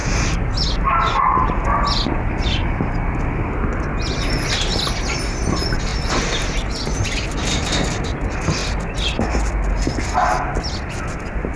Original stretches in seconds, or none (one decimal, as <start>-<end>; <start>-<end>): 0.0-11.6